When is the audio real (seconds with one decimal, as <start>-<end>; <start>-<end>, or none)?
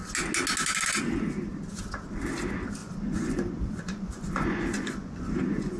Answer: 0.0-2.8